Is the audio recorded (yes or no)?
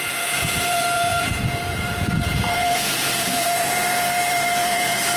no